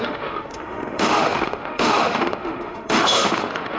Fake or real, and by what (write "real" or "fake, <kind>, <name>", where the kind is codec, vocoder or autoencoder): fake, autoencoder, DAC-VAE